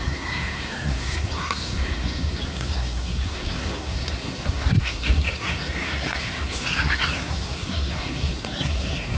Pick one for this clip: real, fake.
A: fake